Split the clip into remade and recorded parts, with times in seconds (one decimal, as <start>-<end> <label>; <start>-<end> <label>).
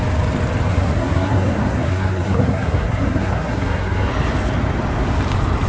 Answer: 0.0-0.7 recorded; 0.7-4.1 remade; 4.1-5.7 recorded